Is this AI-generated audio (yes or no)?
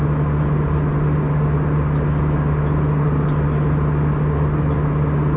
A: no